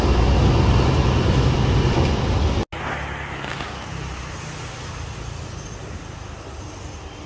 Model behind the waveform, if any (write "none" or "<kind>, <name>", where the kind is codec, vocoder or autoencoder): none